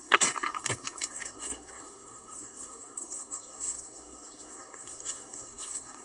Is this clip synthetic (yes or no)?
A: yes